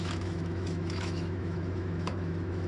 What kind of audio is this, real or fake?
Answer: fake